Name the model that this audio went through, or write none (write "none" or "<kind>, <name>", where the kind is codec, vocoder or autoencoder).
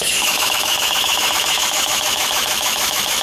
autoencoder, DAC-VAE